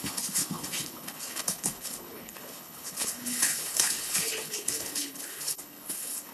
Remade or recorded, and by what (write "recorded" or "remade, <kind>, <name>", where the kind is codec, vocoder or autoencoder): remade, codec, HILCodec